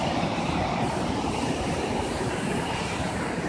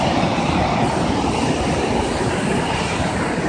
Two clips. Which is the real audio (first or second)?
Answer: second